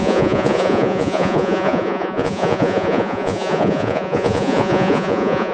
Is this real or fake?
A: fake